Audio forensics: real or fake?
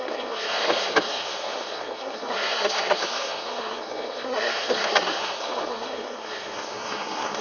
fake